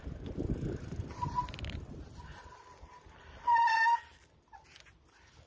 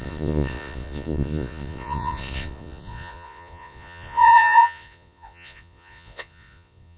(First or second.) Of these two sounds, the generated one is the second